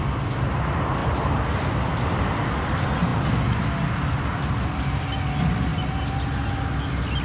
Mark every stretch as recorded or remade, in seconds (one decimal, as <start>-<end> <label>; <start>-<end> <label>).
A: 0.0-7.2 recorded